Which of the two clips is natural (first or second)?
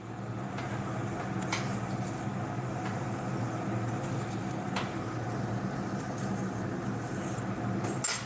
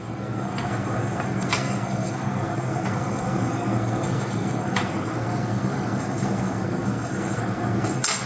first